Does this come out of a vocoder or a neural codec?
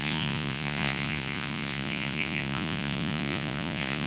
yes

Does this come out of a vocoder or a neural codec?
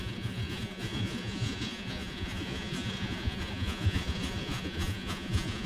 yes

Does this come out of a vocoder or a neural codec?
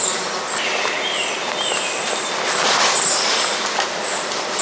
no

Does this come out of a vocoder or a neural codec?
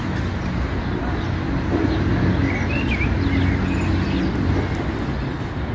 no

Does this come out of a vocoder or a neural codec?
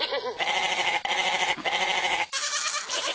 no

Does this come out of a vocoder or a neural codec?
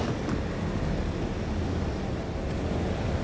no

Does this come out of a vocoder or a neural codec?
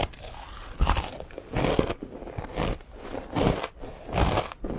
no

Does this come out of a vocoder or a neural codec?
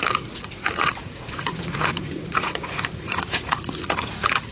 yes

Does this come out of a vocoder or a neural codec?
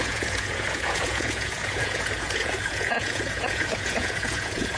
yes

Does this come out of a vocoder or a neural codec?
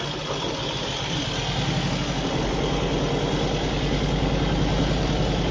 no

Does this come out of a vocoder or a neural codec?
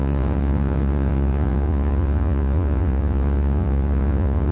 yes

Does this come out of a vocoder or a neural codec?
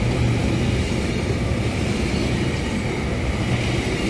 no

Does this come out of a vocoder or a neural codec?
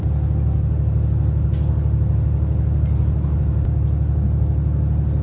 no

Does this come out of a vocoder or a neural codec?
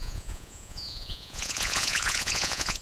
yes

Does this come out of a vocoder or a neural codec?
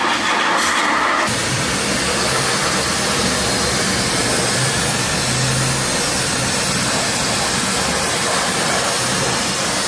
no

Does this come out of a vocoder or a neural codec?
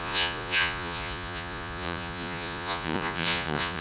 yes